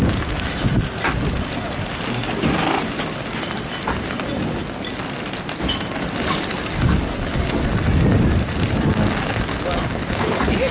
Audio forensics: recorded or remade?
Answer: recorded